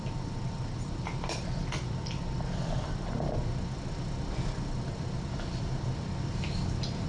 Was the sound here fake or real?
fake